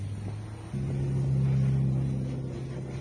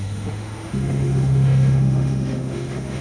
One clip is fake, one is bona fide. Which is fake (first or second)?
second